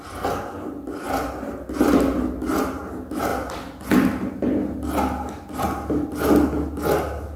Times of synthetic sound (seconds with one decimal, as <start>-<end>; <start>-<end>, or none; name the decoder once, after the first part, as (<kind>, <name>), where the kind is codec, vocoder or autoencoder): none